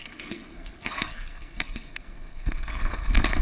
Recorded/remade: remade